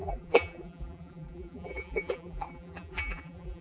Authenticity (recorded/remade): remade